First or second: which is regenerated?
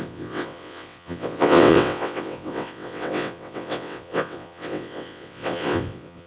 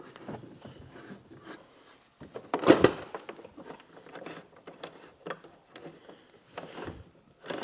first